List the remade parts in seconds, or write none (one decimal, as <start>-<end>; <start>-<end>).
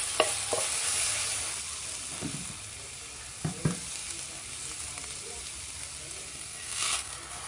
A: 6.3-7.1